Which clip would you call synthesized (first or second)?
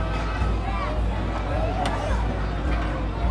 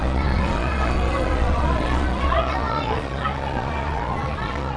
second